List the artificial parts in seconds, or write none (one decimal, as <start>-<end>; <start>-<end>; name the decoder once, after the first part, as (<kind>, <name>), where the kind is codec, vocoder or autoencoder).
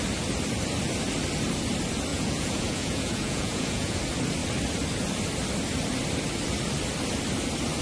2.1-4.0 (vocoder, Vocos)